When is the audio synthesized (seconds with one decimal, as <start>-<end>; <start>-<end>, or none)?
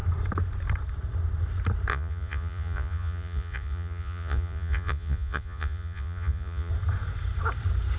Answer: 1.9-6.7